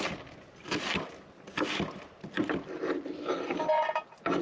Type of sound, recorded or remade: recorded